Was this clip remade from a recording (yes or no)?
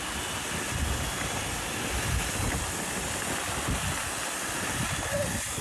no